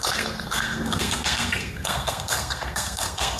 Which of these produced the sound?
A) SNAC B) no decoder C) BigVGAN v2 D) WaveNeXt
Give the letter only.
A